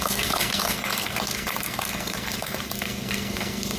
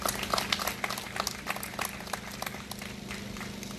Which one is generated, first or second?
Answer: first